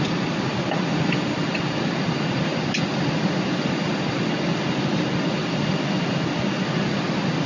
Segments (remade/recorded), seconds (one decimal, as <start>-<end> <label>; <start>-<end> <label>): 0.0-7.5 recorded